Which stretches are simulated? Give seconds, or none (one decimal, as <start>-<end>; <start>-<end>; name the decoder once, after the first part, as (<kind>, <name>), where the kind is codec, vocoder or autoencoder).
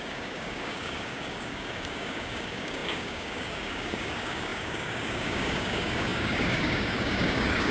0.0-7.7 (codec, DAC)